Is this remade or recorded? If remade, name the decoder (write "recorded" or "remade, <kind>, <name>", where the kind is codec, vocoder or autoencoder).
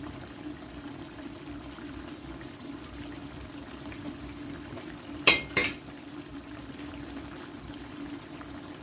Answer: remade, vocoder, BigVGAN v2